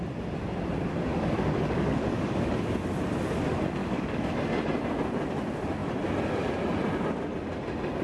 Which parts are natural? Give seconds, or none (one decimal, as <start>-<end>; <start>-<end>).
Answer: 0.0-1.1; 2.5-3.8; 4.3-8.0